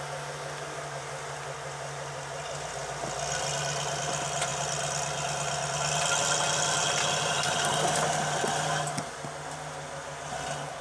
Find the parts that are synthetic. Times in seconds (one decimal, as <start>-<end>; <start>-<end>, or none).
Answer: none

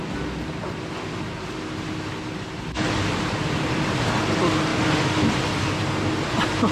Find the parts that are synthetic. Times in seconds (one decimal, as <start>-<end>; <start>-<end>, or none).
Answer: none

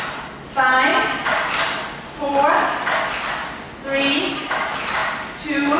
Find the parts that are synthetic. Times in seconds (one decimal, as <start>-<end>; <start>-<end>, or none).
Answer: none

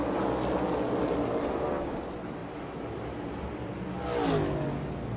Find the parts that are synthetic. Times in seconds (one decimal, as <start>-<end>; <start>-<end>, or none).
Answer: 2.4-3.4

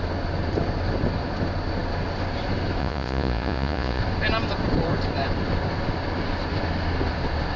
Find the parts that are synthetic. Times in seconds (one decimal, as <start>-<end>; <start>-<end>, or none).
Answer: 2.8-4.0

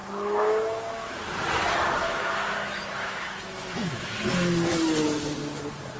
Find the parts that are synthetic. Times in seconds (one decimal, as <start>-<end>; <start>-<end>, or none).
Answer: 0.0-1.2; 2.0-4.1

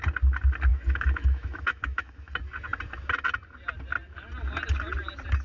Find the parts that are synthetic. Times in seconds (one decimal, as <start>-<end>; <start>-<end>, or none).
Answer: 0.7-2.3